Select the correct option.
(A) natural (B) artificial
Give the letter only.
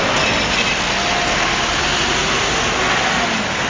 A